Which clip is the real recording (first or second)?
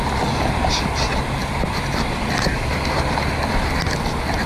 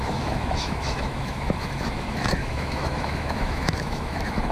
first